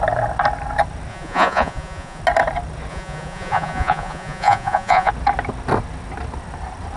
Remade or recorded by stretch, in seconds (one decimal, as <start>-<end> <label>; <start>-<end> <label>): 0.0-1.1 recorded; 1.1-2.2 remade; 2.2-2.9 recorded; 2.9-5.1 remade; 5.1-7.0 recorded